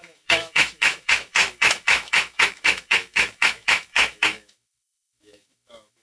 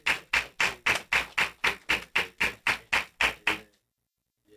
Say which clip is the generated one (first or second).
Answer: first